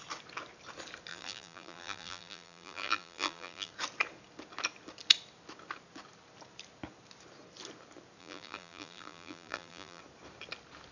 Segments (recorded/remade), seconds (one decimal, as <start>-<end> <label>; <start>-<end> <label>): 0.0-1.1 recorded; 1.1-3.7 remade; 3.7-8.2 recorded; 8.2-10.0 remade; 10.0-10.9 recorded